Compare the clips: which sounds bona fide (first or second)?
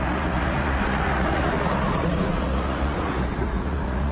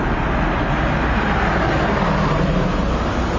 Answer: second